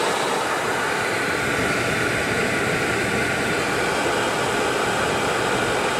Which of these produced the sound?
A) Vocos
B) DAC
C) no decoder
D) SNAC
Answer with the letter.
C